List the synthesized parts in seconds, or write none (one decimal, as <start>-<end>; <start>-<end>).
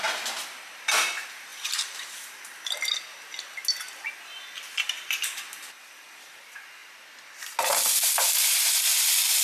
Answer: 1.5-2.4